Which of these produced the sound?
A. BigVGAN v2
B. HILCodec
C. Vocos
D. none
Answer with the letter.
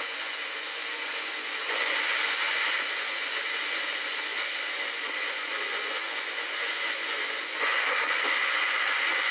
C